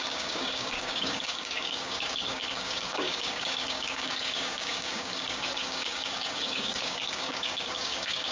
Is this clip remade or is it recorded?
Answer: remade